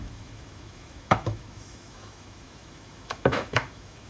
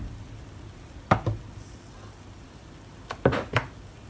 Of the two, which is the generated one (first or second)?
first